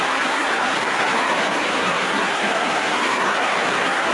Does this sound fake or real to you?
fake